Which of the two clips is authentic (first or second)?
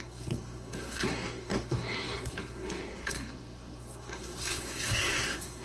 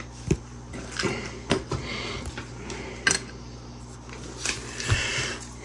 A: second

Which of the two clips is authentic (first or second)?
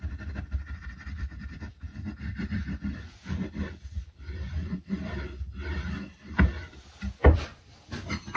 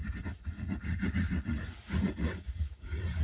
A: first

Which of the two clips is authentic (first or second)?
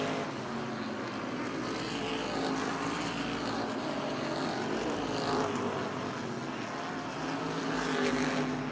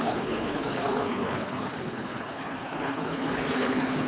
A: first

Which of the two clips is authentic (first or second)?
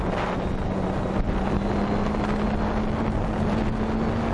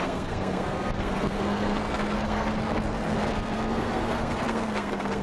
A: first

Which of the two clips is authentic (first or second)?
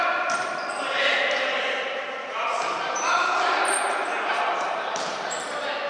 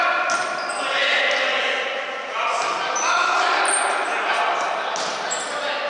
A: second